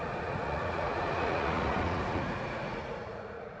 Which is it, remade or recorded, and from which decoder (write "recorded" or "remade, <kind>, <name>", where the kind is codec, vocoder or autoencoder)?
remade, vocoder, Vocos